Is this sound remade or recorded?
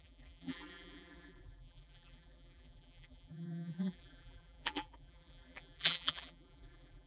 remade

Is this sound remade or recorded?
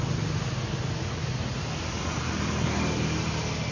recorded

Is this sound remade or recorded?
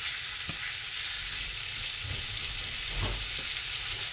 recorded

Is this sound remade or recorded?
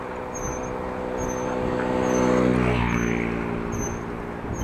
recorded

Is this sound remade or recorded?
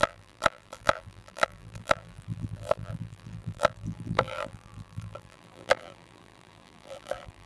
remade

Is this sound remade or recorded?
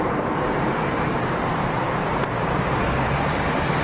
remade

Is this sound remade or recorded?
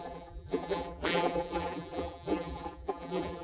remade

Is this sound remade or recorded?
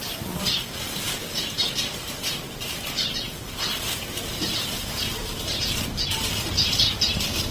recorded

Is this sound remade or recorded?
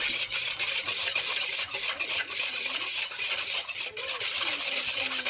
recorded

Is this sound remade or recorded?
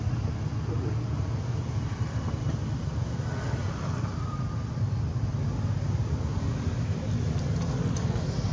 recorded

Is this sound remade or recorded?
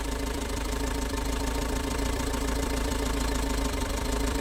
remade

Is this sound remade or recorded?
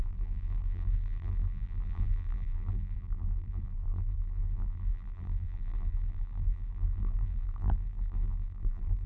remade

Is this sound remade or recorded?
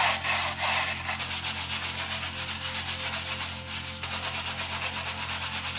recorded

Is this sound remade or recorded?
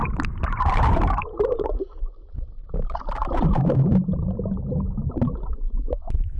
remade